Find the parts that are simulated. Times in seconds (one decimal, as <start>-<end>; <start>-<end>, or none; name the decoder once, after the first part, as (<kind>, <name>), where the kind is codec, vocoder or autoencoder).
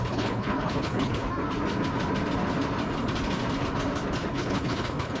0.0-1.2 (codec, HILCodec); 4.3-5.2